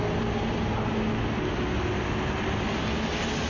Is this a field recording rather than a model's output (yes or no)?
yes